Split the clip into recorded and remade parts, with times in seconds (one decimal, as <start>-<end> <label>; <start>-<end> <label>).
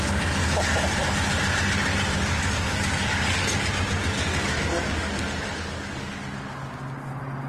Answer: 0.0-0.4 recorded; 0.4-1.0 remade; 1.0-2.3 recorded; 2.3-3.7 remade; 3.7-4.3 recorded; 4.3-6.2 remade; 6.2-7.5 recorded